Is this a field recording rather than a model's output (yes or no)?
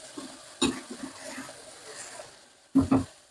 yes